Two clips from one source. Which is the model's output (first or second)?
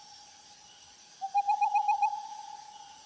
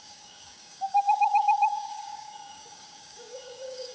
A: second